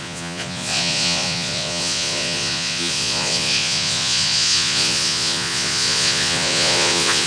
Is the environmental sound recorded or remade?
remade